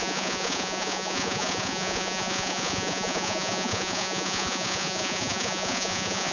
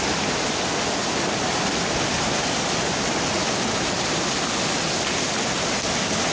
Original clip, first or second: second